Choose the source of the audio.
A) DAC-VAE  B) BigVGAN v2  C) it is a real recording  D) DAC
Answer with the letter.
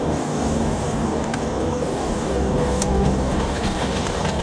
D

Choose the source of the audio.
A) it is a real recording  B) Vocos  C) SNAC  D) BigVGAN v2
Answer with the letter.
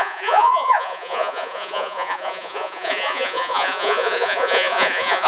B